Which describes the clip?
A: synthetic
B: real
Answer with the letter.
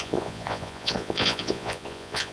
A